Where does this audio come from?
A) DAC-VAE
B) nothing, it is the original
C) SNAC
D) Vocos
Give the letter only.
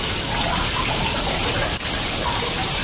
B